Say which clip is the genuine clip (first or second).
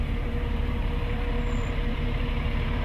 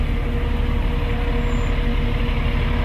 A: second